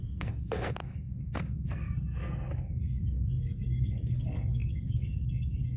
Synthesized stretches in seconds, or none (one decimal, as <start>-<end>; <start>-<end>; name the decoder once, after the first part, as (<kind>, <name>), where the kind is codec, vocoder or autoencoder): 0.0-5.8 (codec, SNAC)